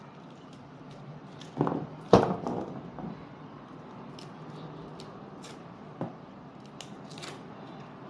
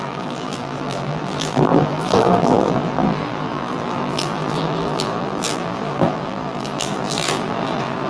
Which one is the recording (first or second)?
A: first